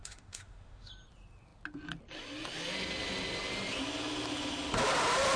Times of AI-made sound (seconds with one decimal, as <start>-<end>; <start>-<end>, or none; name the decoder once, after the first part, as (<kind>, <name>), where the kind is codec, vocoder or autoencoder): 0.0-0.9 (autoencoder, DAC-VAE)